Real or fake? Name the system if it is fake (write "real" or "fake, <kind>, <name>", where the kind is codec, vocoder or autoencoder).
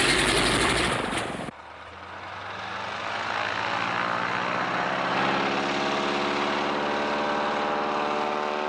real